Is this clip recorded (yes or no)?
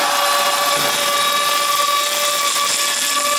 yes